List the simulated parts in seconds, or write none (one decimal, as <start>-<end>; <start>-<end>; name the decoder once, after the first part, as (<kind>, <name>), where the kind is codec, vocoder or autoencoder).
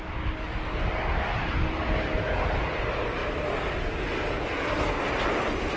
none